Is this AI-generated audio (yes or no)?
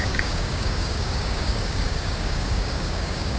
yes